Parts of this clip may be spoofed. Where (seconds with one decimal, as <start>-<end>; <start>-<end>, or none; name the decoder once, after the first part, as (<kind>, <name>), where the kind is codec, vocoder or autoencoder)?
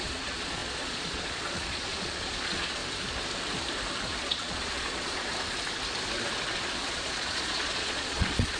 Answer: 0.0-2.8 (vocoder, Vocos); 4.2-5.3; 6.5-8.6